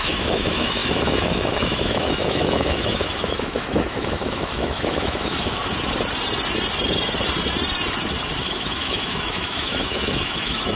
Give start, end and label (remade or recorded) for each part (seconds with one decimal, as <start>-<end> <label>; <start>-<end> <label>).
0.0-5.6 remade; 5.6-8.4 recorded; 8.4-10.8 remade